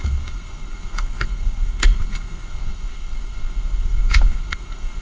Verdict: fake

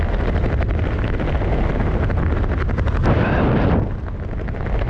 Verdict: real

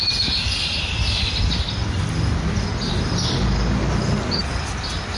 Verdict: real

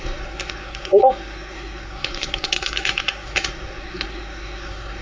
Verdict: fake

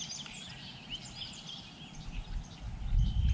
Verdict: real